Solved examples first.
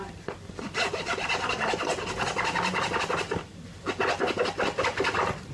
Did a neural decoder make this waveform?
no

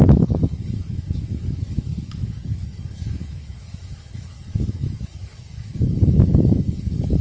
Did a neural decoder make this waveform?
yes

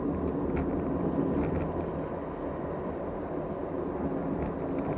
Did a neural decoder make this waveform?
no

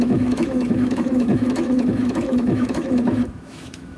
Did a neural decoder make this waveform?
yes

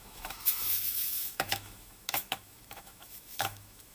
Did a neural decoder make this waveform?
yes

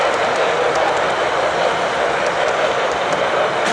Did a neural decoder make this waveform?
no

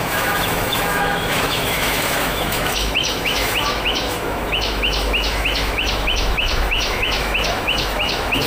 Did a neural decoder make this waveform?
yes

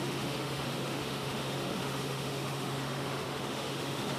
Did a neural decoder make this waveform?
yes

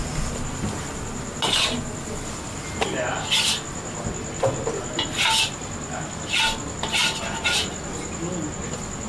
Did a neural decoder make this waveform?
no